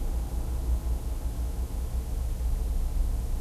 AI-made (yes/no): no